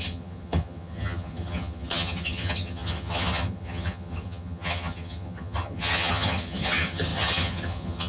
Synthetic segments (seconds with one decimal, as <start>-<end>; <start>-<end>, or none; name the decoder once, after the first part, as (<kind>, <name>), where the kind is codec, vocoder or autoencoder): 0.0-8.1 (vocoder, HiFi-GAN)